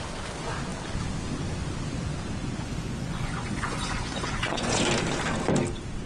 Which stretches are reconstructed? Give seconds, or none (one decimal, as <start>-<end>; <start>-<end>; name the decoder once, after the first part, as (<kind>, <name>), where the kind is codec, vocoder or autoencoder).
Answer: 2.4-4.8 (vocoder, Vocos)